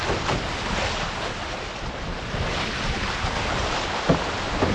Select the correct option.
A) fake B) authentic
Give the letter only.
B